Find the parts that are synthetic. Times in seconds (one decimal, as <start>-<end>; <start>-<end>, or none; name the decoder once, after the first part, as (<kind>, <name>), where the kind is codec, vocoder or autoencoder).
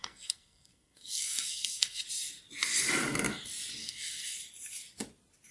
0.0-2.0 (codec, SNAC); 3.8-4.4